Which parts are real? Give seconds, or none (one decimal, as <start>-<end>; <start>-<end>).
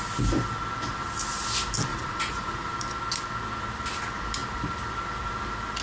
0.0-1.9; 2.7-5.8